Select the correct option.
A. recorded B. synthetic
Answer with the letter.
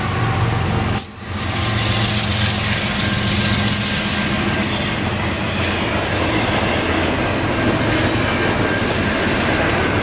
A